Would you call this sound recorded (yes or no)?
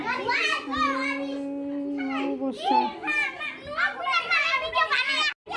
yes